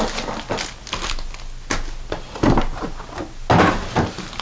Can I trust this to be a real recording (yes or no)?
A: yes